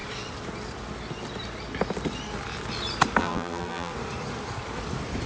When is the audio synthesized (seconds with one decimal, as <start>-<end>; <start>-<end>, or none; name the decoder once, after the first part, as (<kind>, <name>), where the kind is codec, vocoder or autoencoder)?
3.2-3.9 (vocoder, BigVGAN v2)